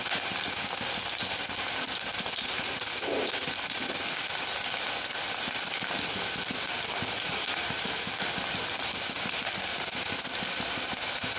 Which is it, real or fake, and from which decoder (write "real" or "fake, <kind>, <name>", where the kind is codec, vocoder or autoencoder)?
real